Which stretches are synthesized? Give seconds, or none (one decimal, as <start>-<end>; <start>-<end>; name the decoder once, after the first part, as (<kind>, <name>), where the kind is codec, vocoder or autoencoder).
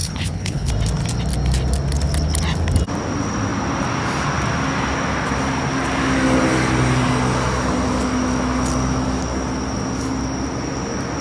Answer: 0.0-0.7 (codec, HILCodec)